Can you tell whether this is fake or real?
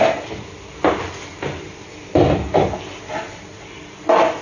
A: real